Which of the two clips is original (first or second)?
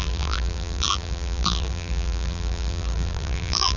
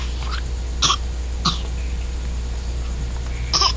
second